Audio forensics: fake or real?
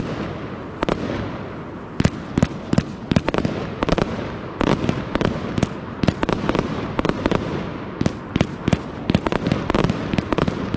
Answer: real